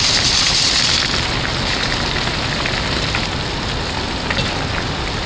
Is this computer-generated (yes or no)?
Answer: no